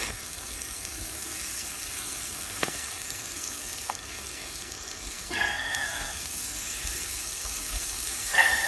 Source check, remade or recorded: remade